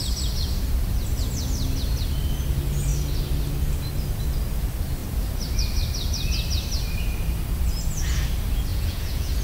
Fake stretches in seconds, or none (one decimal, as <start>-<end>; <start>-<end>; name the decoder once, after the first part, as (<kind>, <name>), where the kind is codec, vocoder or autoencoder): 8.7-9.4 (vocoder, Vocos)